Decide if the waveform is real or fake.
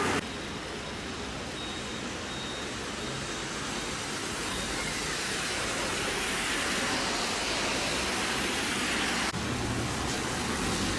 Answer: real